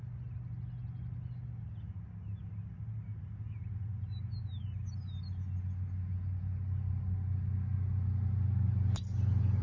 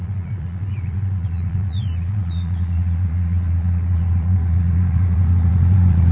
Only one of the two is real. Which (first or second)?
first